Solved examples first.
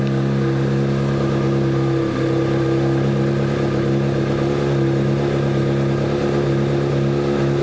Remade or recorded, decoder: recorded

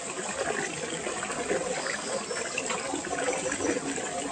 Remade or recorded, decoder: recorded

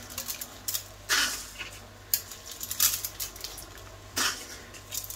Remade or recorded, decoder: recorded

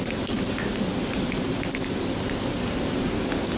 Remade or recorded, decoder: recorded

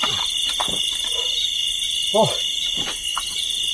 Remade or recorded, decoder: recorded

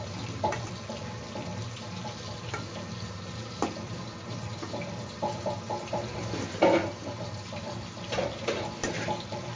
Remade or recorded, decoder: remade, vocoder, BigVGAN v2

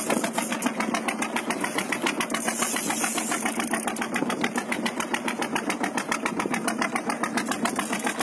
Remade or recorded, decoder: recorded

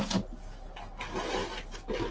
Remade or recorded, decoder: recorded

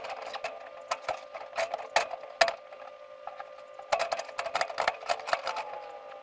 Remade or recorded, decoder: recorded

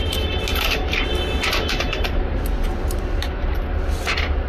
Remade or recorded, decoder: recorded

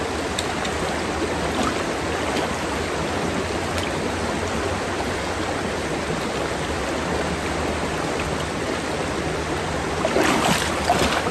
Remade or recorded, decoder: recorded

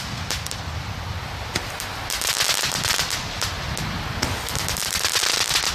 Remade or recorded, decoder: recorded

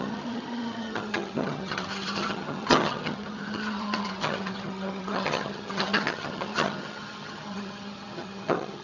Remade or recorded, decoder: remade, vocoder, HiFi-GAN